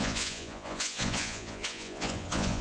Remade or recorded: remade